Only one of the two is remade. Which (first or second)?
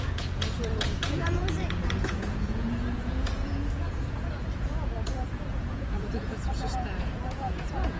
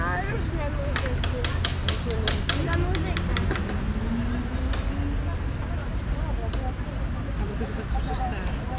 first